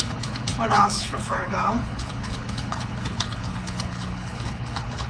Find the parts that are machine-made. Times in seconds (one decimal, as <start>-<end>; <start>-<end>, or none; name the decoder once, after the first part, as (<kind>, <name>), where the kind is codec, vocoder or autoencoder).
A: 0.0-5.1 (codec, HILCodec)